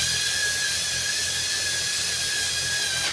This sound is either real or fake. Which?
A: real